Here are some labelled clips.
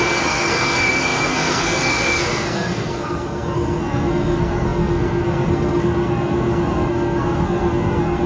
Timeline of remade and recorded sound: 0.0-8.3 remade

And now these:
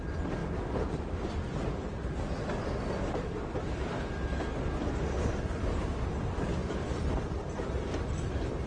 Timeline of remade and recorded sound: 0.0-8.7 recorded

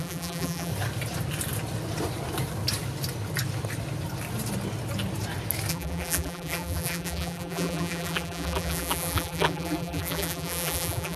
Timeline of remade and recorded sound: 0.0-0.7 remade; 0.7-5.7 recorded; 5.7-11.2 remade

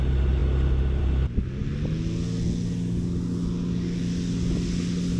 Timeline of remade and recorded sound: 0.0-5.2 recorded